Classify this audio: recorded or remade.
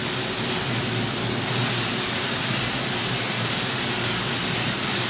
recorded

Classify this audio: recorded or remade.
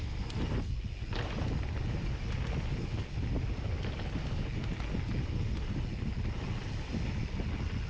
recorded